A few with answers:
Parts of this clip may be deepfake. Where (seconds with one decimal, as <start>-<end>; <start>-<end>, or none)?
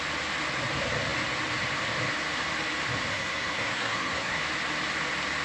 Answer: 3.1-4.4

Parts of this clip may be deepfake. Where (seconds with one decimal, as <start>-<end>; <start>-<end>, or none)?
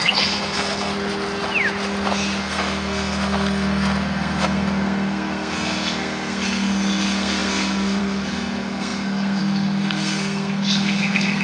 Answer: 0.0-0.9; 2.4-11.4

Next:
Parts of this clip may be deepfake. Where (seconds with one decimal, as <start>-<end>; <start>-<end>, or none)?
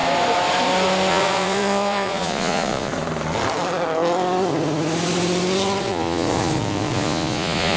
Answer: 1.1-2.9; 5.8-7.8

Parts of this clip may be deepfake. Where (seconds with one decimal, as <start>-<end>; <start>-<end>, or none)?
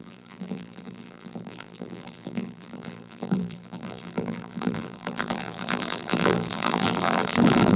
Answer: 0.0-7.8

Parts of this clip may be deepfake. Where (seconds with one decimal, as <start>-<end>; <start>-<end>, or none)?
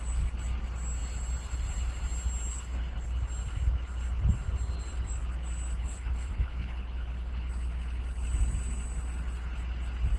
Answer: 2.5-3.2; 5.8-7.5